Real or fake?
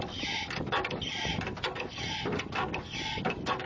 real